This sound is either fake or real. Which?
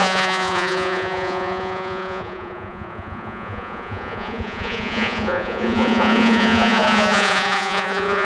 fake